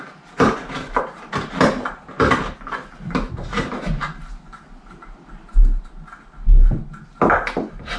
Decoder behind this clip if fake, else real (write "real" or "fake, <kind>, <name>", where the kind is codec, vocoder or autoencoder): real